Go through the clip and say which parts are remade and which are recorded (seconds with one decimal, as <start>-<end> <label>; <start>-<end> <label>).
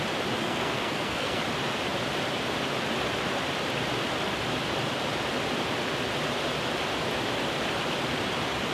0.0-0.4 recorded; 0.4-1.4 remade; 1.4-8.7 recorded